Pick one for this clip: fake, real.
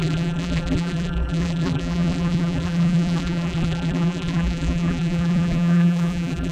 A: fake